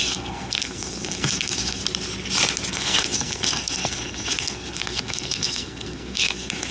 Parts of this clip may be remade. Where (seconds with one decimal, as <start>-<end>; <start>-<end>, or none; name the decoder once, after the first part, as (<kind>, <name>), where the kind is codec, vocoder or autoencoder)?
0.0-1.8 (codec, SNAC); 2.7-6.7